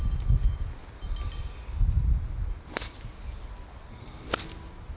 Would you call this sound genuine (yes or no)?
yes